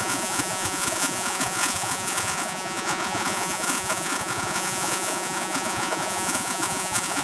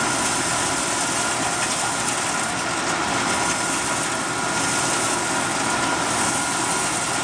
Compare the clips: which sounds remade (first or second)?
first